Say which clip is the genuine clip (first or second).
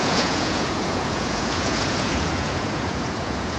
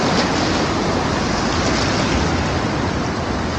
second